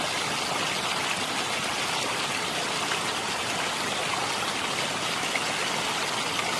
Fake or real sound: real